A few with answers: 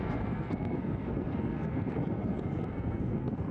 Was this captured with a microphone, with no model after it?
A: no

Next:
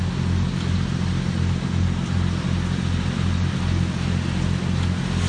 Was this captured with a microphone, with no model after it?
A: yes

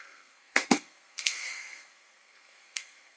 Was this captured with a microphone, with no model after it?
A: no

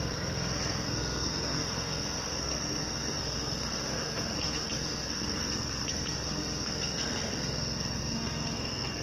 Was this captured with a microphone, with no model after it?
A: no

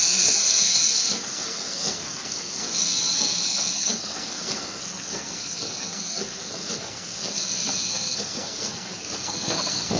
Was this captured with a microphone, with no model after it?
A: no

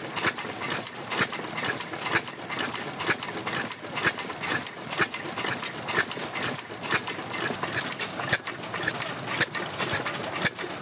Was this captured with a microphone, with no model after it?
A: yes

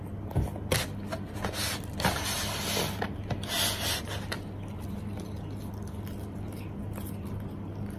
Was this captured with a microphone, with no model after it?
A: yes